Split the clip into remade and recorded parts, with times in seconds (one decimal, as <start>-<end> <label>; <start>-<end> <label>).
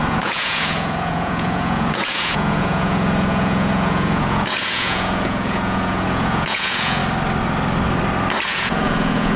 0.0-7.0 remade; 7.0-8.5 recorded; 8.5-9.4 remade